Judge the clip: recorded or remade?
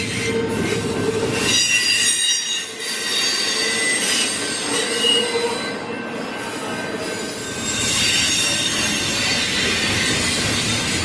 recorded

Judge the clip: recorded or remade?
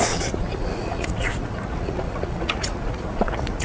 remade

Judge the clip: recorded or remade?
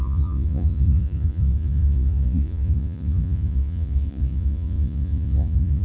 remade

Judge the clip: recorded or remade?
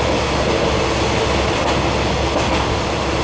recorded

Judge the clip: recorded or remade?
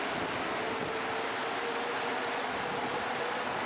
recorded